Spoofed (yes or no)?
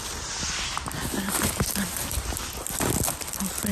no